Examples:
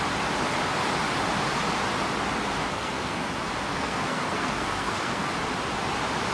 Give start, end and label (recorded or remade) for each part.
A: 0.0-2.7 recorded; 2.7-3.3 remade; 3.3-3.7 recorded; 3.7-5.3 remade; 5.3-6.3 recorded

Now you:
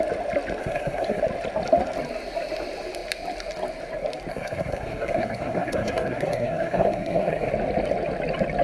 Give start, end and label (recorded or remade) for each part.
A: 0.0-0.6 recorded; 0.6-1.2 remade; 1.2-4.3 recorded; 4.3-7.5 remade; 7.5-8.6 recorded

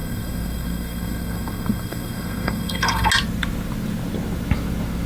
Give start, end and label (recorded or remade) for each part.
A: 0.0-3.1 remade; 3.1-5.1 recorded

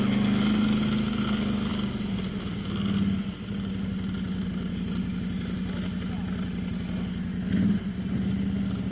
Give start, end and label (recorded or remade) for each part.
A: 0.0-8.9 recorded

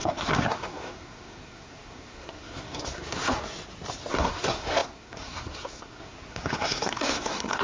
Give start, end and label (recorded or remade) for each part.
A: 0.0-3.4 remade; 3.4-4.1 recorded; 4.1-7.6 remade

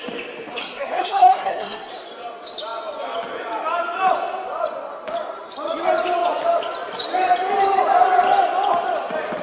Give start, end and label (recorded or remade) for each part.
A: 0.0-0.6 recorded; 0.6-1.9 remade; 1.9-9.4 recorded